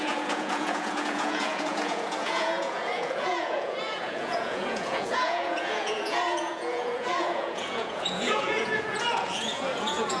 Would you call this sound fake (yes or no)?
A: yes